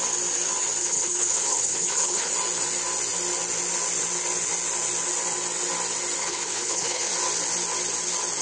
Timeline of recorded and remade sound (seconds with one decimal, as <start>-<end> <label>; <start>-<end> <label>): 0.0-0.8 recorded; 0.8-2.3 remade; 2.3-6.2 recorded; 6.2-7.1 remade; 7.1-8.4 recorded